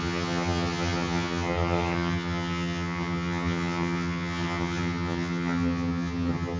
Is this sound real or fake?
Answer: fake